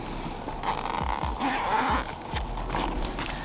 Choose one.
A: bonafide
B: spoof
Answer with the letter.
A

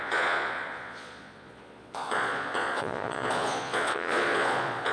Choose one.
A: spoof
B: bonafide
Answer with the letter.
A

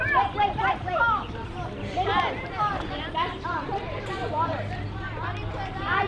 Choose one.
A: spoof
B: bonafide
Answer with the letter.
A